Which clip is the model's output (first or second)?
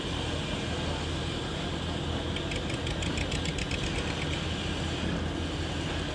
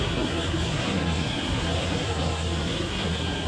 second